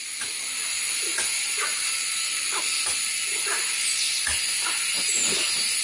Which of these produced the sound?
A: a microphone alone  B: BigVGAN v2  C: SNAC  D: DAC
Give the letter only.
A